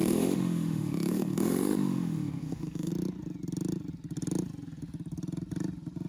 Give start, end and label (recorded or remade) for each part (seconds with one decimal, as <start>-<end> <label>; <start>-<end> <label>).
0.0-2.9 remade; 2.9-6.1 recorded